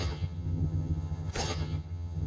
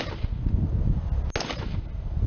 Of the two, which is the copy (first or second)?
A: first